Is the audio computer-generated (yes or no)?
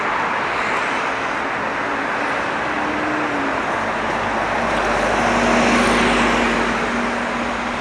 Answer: no